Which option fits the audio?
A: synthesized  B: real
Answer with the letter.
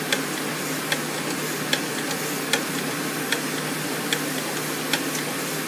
B